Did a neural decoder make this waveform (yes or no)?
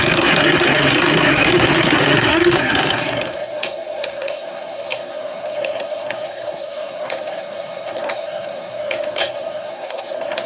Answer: yes